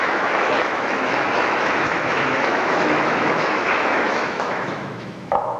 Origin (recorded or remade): remade